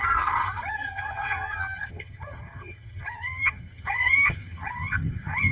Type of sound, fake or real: fake